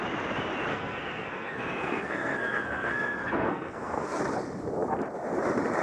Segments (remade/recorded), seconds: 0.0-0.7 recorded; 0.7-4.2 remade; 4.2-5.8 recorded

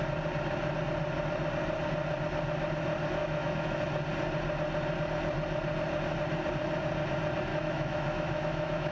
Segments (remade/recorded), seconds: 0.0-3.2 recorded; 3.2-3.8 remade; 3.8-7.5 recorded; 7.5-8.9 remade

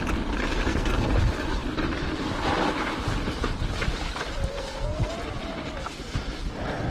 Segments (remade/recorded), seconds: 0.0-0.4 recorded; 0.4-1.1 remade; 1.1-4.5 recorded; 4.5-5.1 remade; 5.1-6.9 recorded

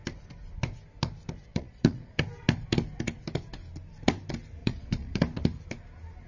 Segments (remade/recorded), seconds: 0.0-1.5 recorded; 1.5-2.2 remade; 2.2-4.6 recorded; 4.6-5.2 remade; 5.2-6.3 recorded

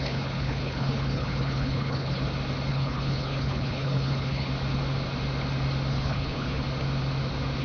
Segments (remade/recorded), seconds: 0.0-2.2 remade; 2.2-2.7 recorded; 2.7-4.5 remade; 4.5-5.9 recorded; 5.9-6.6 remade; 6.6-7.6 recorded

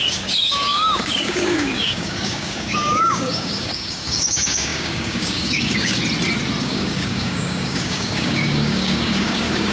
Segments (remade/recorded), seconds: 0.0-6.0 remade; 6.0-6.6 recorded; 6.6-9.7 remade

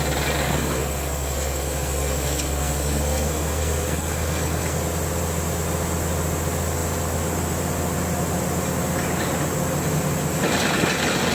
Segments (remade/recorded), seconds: 0.0-0.4 recorded; 0.4-4.8 remade; 4.8-11.3 recorded

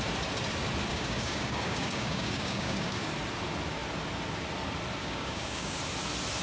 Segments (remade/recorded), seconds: 0.0-0.9 recorded; 0.9-3.1 remade; 3.1-5.0 recorded; 5.0-5.8 remade; 5.8-6.4 recorded